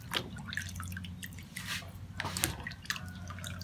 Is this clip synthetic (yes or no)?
no